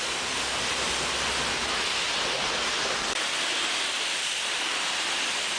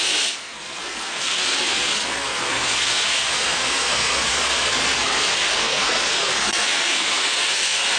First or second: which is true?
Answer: first